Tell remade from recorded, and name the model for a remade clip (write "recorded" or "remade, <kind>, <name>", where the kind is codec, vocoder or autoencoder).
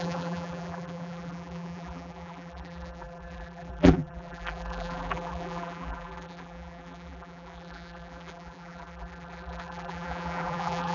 remade, vocoder, BigVGAN v2